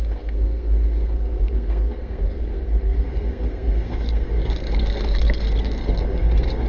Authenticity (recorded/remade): remade